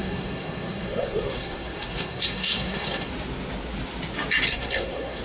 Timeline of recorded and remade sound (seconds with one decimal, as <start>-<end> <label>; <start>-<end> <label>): 0.0-3.1 remade; 3.1-4.5 recorded; 4.5-5.2 remade